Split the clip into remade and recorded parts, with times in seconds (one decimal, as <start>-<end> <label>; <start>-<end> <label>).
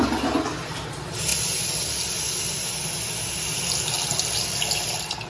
0.0-5.3 recorded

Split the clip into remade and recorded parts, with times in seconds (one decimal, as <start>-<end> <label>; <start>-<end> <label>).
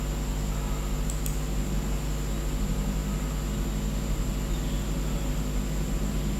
0.0-6.4 recorded